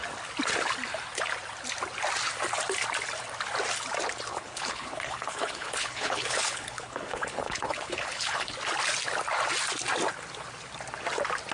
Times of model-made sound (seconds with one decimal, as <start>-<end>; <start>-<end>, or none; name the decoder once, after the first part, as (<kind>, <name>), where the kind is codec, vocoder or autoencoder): 4.3-8.6 (codec, HILCodec)